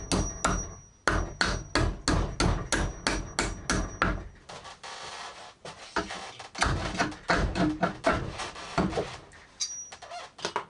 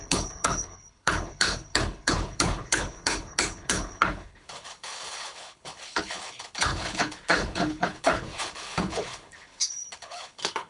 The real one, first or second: first